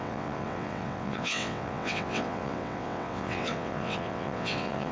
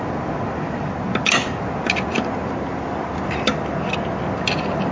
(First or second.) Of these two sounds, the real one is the second